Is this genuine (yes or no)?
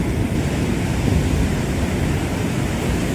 yes